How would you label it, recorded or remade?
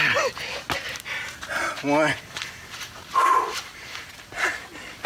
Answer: recorded